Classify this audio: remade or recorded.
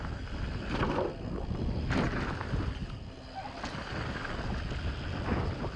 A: recorded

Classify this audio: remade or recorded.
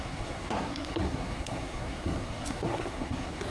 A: remade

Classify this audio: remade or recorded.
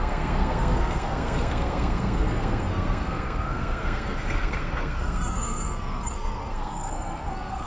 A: remade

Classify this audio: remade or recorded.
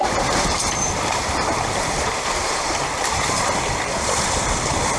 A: remade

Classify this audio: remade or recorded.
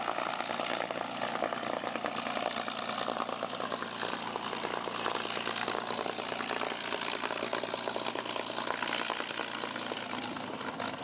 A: recorded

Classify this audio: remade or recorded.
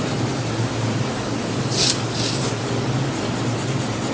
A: recorded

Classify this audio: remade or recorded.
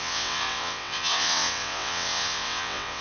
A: remade